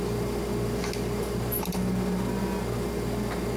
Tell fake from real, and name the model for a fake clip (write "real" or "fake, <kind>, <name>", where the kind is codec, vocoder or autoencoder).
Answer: real